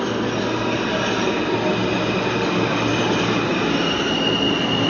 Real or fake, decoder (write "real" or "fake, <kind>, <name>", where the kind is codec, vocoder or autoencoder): real